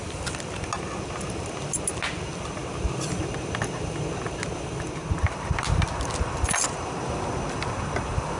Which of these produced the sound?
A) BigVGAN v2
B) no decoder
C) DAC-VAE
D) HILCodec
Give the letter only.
B